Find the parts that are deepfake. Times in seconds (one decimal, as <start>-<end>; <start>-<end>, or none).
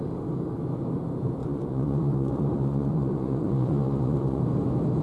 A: 1.4-4.4